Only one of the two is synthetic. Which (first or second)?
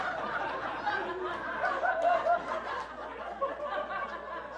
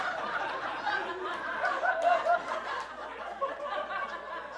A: second